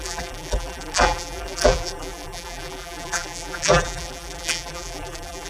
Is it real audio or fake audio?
fake